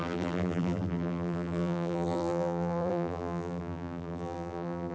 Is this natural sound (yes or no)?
no